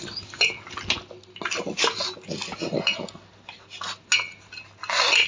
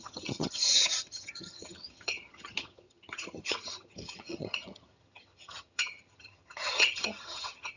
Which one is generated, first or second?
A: second